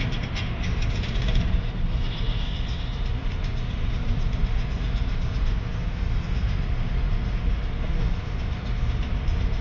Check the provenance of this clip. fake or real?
real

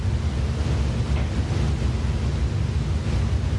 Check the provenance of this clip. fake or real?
real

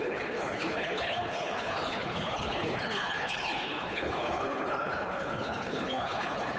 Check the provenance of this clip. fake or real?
fake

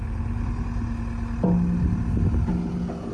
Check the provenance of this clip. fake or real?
real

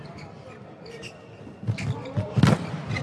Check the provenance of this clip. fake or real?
real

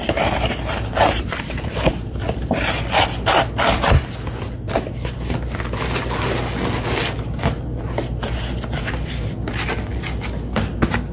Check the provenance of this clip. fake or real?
real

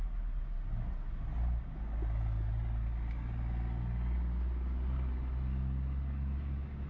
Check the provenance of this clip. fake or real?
real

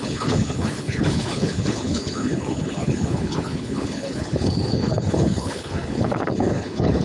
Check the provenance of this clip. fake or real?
fake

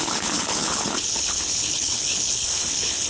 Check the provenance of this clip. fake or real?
fake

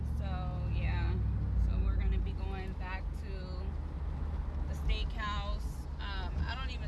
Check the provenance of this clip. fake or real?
real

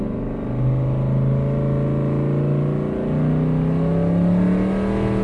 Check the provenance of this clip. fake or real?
real